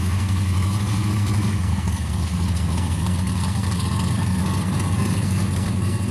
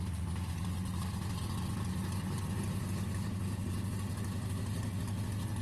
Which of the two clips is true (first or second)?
second